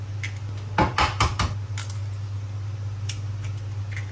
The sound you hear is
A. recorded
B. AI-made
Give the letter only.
A